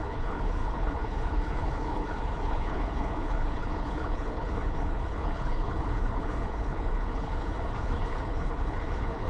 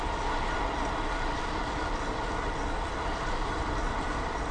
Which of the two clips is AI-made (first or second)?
first